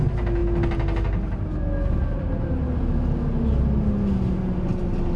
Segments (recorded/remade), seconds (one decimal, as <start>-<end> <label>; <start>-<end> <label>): 0.0-5.2 recorded